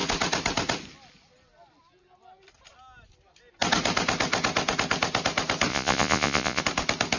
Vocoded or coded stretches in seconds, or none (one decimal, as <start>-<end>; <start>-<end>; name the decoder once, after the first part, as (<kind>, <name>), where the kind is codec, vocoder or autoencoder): 5.7-6.6 (vocoder, Vocos)